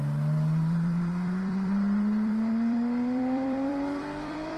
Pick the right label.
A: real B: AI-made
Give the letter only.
B